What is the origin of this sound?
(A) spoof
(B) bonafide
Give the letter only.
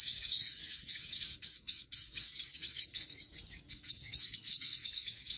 A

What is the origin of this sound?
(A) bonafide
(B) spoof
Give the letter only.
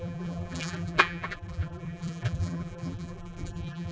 B